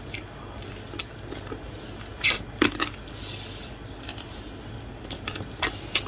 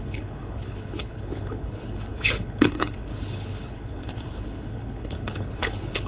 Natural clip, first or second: first